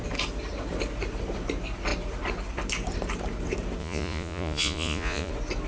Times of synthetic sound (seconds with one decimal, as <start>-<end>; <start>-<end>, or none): 3.8-5.3

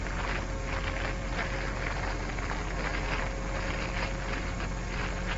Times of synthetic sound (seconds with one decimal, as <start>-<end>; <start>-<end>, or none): none

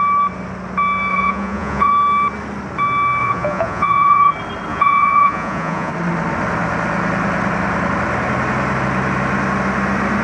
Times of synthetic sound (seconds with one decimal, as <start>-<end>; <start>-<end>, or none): 1.1-1.9; 3.2-4.3; 4.7-5.9

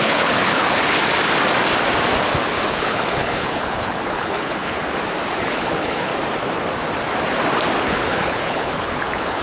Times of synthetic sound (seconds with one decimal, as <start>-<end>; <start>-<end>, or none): 0.0-1.0; 2.7-4.8; 5.4-6.1; 7.8-9.4

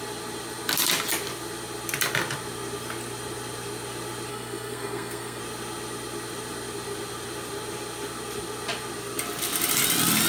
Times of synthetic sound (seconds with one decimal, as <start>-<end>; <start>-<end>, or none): 4.3-5.4

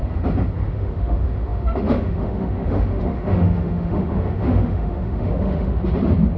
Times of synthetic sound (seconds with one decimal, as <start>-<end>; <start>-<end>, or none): 0.7-5.8